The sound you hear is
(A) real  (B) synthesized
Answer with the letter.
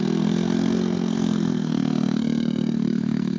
B